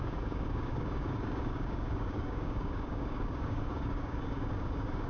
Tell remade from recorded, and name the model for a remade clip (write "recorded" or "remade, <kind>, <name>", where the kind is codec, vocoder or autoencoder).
remade, codec, DAC